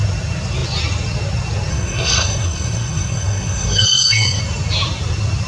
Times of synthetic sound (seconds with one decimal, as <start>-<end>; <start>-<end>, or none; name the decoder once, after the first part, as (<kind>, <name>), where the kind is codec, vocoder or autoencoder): 1.7-4.4 (codec, SNAC)